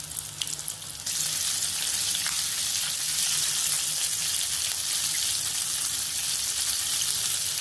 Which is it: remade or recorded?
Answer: recorded